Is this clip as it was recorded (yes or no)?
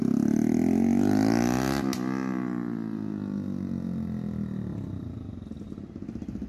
yes